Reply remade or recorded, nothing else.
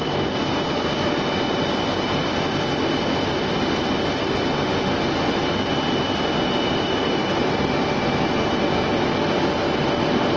recorded